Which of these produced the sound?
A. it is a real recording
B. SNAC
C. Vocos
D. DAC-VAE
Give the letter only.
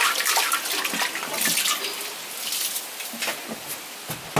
A